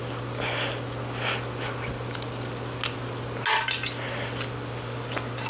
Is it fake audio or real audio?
real